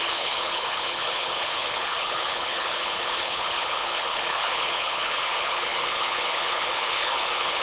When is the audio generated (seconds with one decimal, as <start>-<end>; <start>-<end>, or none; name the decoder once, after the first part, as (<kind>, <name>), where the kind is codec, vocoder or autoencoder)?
0.0-7.6 (codec, HILCodec)